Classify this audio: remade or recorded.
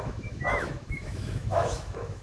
remade